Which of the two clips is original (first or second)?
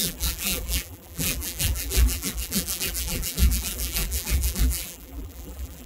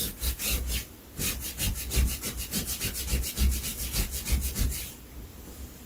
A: second